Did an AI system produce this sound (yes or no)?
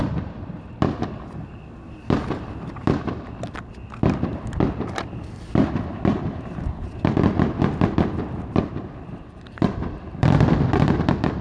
yes